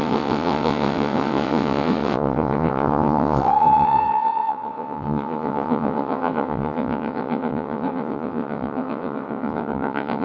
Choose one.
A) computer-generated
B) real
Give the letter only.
A